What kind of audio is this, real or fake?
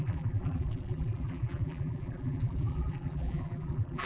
fake